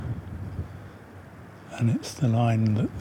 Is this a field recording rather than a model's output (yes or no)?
yes